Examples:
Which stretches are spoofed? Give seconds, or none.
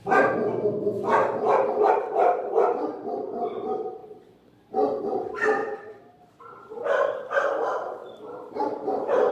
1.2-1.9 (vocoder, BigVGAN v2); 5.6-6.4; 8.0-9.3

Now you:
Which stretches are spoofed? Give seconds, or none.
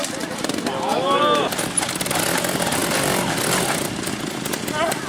none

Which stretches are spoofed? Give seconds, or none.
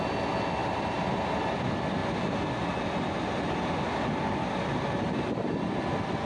0.6-1.2 (vocoder, BigVGAN v2)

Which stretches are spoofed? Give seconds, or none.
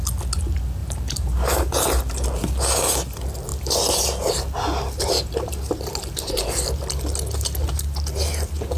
0.8-2.0 (vocoder, BigVGAN v2)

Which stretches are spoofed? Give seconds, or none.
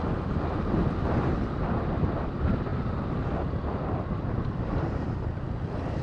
0.0-6.0 (vocoder, BigVGAN v2)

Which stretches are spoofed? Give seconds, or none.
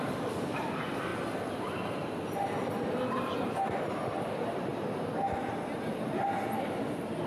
0.0-1.1 (vocoder, BigVGAN v2); 3.8-4.7; 6.6-7.3